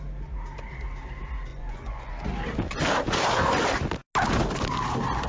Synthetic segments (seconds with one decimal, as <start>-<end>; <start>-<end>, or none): 1.5-2.1